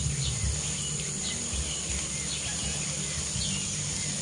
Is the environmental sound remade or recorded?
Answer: recorded